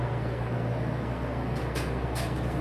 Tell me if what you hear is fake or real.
fake